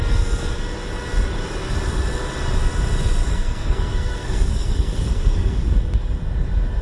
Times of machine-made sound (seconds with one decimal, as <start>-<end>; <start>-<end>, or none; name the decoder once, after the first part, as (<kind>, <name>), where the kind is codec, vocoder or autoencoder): 3.3-5.7 (codec, SNAC)